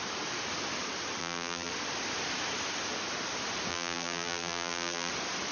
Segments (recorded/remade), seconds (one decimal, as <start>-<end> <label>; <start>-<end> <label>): 0.0-1.2 recorded; 1.2-1.7 remade; 1.7-3.7 recorded; 3.7-5.1 remade; 5.1-5.5 recorded